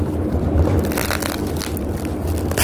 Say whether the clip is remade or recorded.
recorded